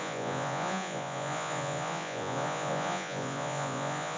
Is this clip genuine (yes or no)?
no